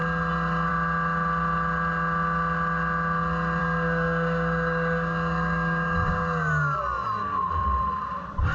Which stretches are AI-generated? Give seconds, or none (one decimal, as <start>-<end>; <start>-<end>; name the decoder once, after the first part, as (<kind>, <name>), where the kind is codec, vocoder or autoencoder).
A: 3.6-6.8 (codec, DAC)